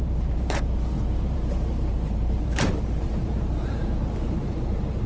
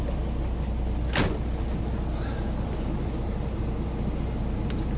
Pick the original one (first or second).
second